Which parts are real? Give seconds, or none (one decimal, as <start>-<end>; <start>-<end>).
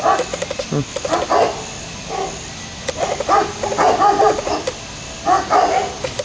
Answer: 0.0-6.2